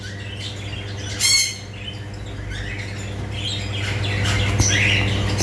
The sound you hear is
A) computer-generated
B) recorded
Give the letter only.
B